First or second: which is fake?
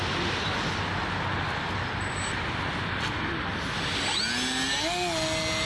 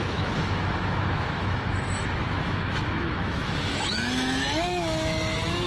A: second